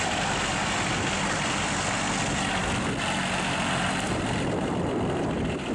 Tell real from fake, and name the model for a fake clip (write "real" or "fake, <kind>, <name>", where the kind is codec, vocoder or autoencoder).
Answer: real